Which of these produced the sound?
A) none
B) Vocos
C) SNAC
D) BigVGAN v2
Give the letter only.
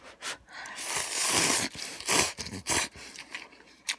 D